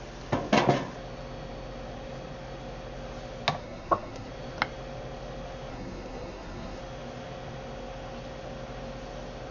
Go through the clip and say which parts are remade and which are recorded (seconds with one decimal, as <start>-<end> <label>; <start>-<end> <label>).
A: 0.0-3.6 recorded; 3.6-4.3 remade; 4.3-5.7 recorded; 5.7-6.8 remade; 6.8-9.5 recorded